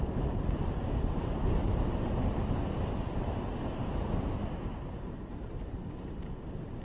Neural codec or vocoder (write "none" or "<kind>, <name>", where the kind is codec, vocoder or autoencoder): none